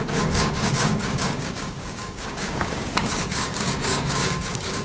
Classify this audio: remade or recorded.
remade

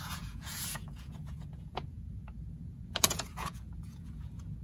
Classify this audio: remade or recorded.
remade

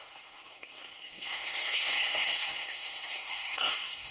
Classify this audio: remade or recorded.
remade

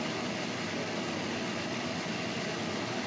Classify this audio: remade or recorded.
recorded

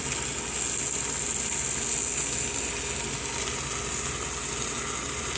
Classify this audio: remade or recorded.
recorded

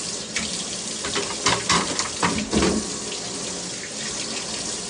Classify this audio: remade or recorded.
recorded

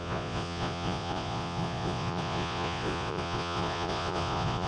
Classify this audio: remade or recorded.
remade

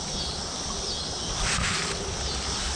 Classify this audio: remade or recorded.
recorded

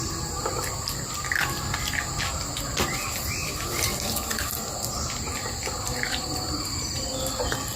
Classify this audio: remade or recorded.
recorded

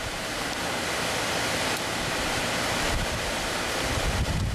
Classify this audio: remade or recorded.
recorded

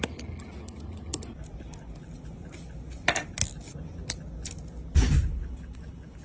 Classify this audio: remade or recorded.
recorded